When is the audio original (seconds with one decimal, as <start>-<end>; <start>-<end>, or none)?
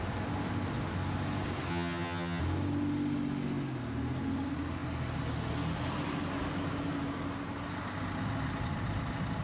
0.0-1.7; 2.4-9.4